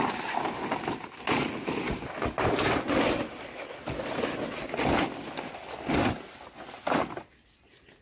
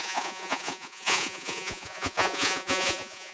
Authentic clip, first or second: first